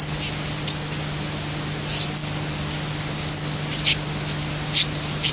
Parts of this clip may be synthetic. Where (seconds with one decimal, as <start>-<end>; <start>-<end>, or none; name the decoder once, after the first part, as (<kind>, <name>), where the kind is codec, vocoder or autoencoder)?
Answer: none